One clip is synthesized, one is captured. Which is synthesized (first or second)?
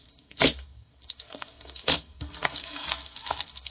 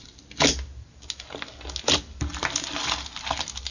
first